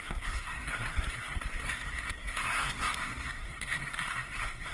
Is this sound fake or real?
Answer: fake